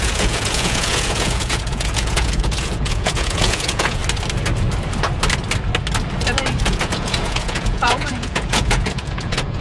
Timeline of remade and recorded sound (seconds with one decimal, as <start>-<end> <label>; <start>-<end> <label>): 0.0-4.0 remade; 4.0-6.6 recorded; 6.6-9.6 remade

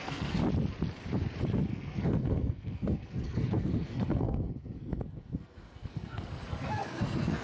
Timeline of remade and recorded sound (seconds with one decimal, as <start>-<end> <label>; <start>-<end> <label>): 0.0-0.4 remade; 0.4-1.7 recorded; 1.7-7.4 remade